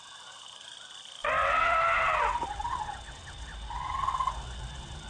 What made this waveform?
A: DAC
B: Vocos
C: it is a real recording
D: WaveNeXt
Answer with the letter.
C